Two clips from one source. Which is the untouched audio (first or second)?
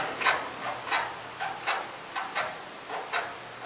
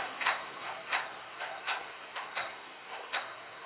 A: first